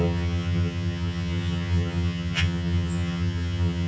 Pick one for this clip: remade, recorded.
remade